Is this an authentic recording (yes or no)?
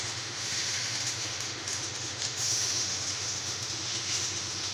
no